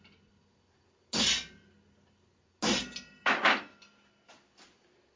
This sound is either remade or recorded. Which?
recorded